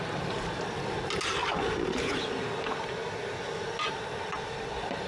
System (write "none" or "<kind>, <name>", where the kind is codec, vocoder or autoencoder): none